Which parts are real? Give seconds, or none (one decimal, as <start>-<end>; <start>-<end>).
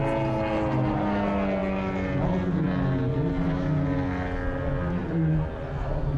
0.0-6.2